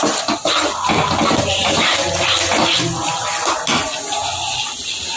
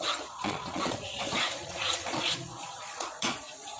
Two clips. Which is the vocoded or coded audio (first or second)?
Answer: second